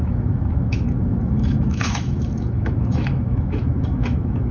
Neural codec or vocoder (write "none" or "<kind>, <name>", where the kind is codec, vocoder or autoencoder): autoencoder, DAC-VAE